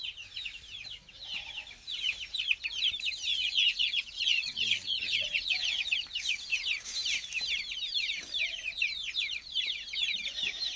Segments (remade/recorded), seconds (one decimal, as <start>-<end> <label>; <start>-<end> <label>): 0.0-3.3 recorded; 3.3-5.8 remade; 5.8-10.8 recorded